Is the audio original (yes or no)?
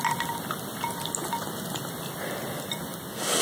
yes